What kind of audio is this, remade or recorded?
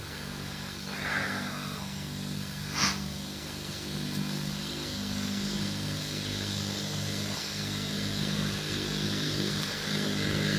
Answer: remade